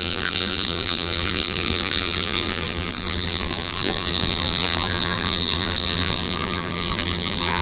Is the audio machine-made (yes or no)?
yes